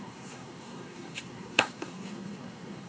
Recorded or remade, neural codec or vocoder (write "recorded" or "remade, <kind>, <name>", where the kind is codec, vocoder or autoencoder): remade, codec, SNAC